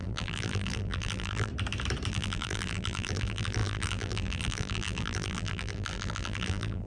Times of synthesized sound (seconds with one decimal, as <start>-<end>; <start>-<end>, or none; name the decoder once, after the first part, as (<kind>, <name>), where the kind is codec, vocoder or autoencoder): 0.0-1.5 (vocoder, BigVGAN v2); 2.1-6.9